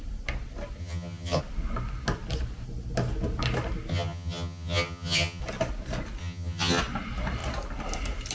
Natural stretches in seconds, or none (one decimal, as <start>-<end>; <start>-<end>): 0.0-0.8; 1.4-3.9; 5.4-6.2; 6.8-8.3